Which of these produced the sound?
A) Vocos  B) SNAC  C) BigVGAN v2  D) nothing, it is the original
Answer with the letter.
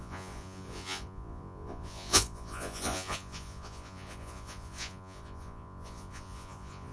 A